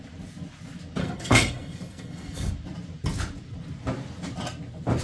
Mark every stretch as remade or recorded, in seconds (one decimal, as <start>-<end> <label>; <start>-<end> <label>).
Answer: 0.0-1.0 recorded; 1.0-2.5 remade; 2.5-5.0 recorded